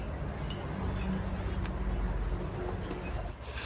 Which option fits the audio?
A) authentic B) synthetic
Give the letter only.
A